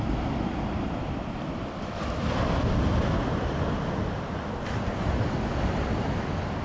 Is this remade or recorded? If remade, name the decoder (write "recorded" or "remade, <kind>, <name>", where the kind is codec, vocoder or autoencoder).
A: recorded